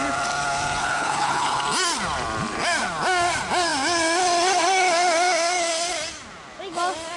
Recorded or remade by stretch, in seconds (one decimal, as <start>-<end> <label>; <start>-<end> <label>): 0.0-0.8 recorded; 0.8-1.6 remade; 1.6-7.2 recorded